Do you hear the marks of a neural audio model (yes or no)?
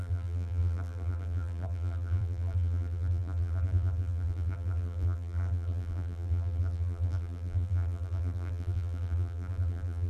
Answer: yes